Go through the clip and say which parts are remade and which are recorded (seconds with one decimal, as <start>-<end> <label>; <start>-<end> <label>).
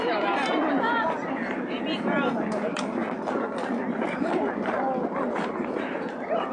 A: 0.0-3.0 remade; 3.0-4.0 recorded; 4.0-6.5 remade